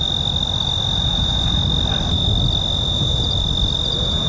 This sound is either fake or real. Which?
real